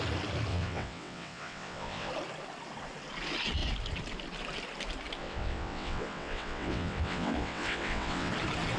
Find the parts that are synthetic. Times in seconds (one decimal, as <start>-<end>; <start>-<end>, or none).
0.5-2.1; 5.2-8.3